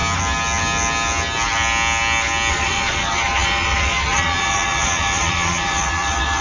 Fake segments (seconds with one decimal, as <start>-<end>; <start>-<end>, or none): 2.5-6.4